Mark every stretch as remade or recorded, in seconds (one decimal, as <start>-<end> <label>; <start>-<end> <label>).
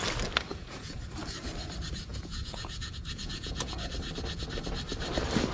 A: 0.0-0.5 recorded; 0.5-1.0 remade; 1.0-2.1 recorded; 2.1-3.9 remade; 3.9-5.5 recorded